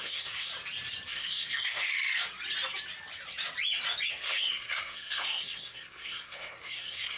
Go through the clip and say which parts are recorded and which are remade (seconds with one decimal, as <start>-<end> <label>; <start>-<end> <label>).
0.0-0.5 remade; 0.5-1.1 recorded; 1.1-1.9 remade; 1.9-4.1 recorded; 4.1-7.2 remade